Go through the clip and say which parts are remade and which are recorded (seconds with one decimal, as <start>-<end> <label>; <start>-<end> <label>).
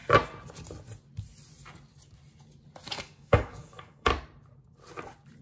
0.0-2.9 recorded; 2.9-4.1 remade; 4.1-5.4 recorded